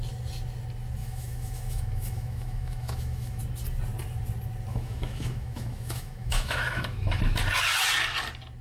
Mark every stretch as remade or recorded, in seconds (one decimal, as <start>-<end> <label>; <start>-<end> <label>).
0.0-1.0 recorded; 1.0-3.4 remade; 3.4-4.7 recorded; 4.7-7.2 remade; 7.2-8.6 recorded